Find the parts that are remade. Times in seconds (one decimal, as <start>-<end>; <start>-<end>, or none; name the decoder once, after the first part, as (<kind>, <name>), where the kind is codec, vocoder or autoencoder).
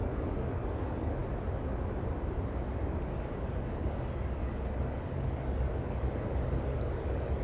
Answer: 0.0-1.2 (codec, DAC); 2.8-7.4